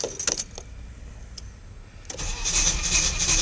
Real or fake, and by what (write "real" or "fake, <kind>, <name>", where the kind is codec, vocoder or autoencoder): real